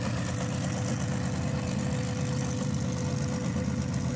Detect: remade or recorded recorded